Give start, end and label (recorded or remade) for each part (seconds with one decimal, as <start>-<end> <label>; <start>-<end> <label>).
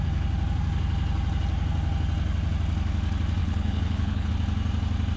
0.0-3.4 recorded; 3.4-4.3 remade; 4.3-5.2 recorded